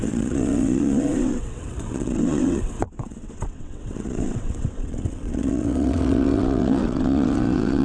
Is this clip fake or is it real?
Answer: fake